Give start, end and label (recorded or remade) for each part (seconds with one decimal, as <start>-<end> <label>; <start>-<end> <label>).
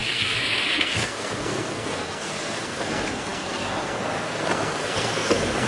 0.0-5.7 remade